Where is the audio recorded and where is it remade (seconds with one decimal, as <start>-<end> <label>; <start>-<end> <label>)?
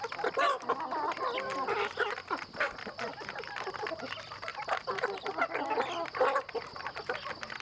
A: 0.0-3.1 recorded; 3.1-4.0 remade; 4.0-4.5 recorded; 4.5-5.3 remade; 5.3-7.6 recorded